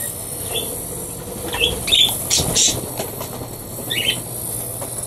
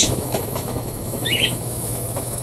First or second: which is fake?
second